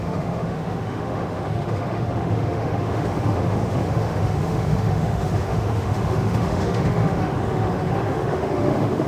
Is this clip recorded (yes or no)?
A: no